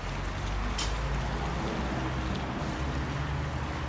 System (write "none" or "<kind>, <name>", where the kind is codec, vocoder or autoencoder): none